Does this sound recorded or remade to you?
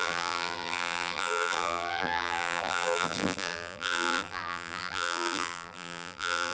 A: remade